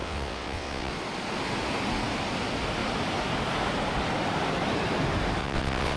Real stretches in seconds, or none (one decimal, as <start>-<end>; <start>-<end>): 0.9-5.4